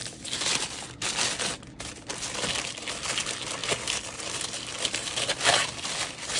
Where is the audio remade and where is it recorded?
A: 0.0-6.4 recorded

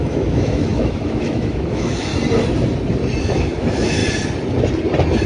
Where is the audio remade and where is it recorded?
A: 0.0-2.1 remade; 2.1-3.2 recorded; 3.2-4.0 remade; 4.0-5.3 recorded

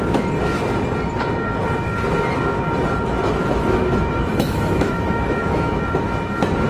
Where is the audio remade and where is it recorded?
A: 0.0-3.4 recorded; 3.4-5.8 remade; 5.8-6.7 recorded

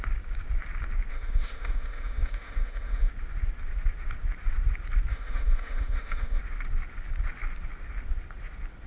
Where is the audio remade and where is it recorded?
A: 0.0-1.1 recorded; 1.1-3.1 remade; 3.1-5.1 recorded; 5.1-6.4 remade; 6.4-8.9 recorded

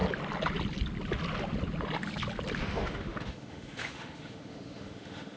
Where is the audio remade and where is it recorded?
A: 0.0-2.6 recorded; 2.6-5.4 remade

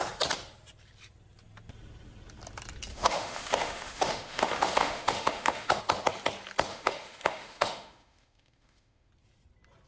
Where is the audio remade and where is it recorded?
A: 0.0-2.9 recorded; 2.9-5.8 remade; 5.8-6.7 recorded; 6.7-9.1 remade; 9.1-9.9 recorded